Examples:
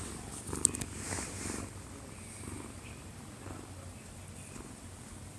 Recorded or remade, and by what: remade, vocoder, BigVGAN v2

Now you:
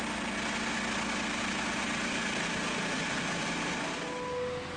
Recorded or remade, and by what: recorded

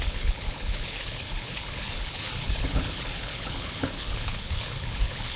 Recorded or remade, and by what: remade, codec, HILCodec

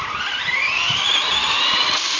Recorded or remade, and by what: recorded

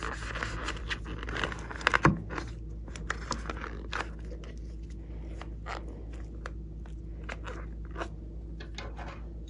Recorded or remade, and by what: recorded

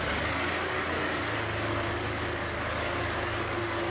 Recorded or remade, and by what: remade, codec, DAC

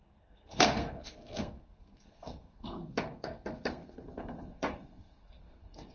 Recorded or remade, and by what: remade, codec, SNAC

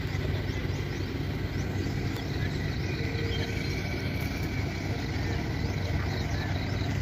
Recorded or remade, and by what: recorded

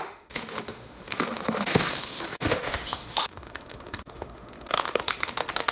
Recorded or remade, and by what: remade, autoencoder, DAC-VAE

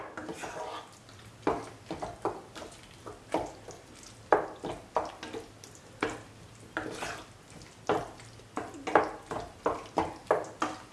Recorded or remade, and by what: recorded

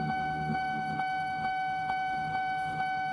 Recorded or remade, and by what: remade, autoencoder, DAC-VAE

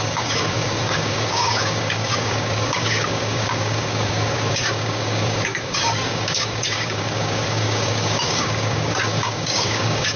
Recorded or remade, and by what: remade, codec, DAC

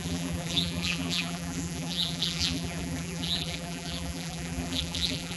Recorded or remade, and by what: remade, vocoder, BigVGAN v2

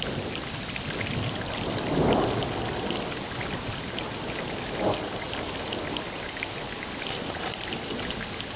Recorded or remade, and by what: recorded